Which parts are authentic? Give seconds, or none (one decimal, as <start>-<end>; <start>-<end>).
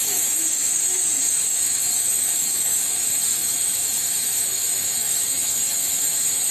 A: none